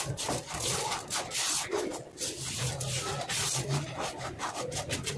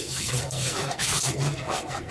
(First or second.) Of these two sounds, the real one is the first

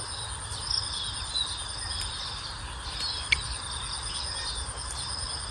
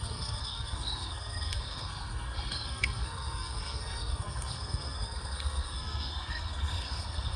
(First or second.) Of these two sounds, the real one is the first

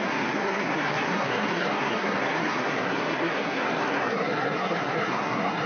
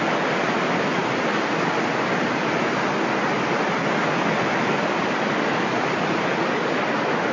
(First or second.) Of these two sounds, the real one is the second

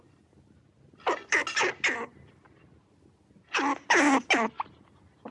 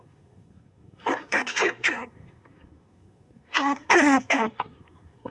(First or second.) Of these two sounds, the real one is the first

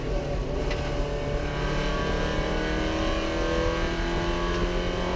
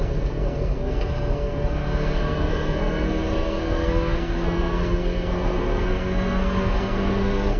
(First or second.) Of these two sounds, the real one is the first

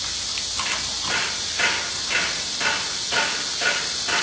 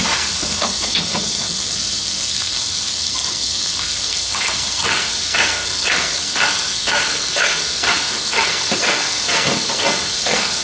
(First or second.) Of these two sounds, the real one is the first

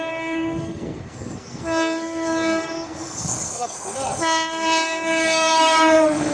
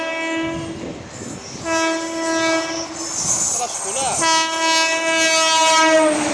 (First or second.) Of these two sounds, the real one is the second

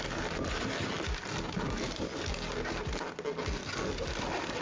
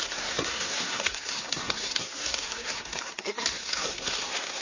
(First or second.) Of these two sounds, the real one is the first